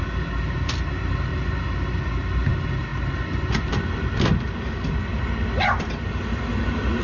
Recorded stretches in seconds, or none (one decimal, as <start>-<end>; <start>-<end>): 0.0-7.0